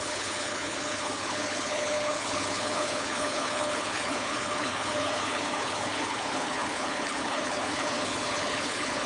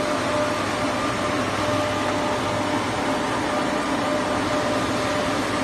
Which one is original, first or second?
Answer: second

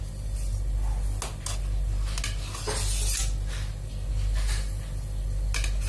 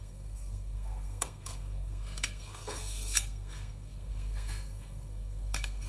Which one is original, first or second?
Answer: first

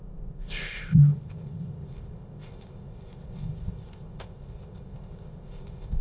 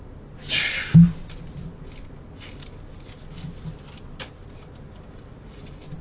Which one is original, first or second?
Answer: second